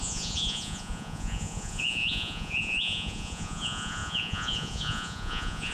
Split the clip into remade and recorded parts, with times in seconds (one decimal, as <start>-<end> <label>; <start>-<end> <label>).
0.0-5.7 remade